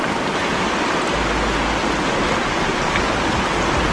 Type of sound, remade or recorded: recorded